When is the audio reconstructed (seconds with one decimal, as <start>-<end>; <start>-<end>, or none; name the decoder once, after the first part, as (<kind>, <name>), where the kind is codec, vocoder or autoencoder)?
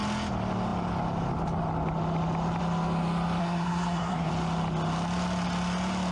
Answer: 3.4-4.3 (codec, SNAC)